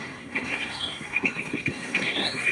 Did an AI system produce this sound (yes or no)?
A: yes